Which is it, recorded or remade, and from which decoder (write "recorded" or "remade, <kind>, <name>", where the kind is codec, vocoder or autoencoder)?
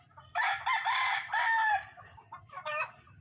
remade, vocoder, BigVGAN v2